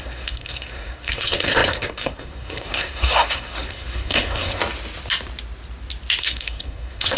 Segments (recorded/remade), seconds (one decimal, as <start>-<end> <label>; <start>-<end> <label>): 0.0-4.6 remade; 4.6-6.2 recorded; 6.2-7.2 remade